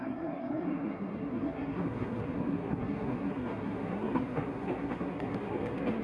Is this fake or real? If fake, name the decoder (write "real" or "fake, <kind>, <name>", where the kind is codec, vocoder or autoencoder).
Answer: fake, codec, SNAC